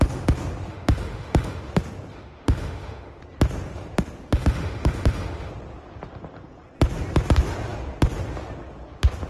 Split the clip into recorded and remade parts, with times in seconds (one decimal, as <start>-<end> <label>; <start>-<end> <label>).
0.0-0.7 recorded; 0.7-1.7 remade; 1.7-2.1 recorded; 2.1-3.2 remade; 3.2-4.3 recorded; 4.3-5.5 remade; 5.5-9.3 recorded